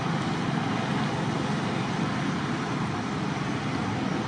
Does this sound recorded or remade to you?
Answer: recorded